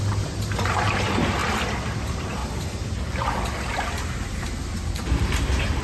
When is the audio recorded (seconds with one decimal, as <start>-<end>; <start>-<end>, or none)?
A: 1.4-2.0; 2.4-3.6